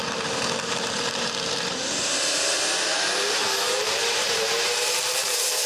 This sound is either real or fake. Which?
fake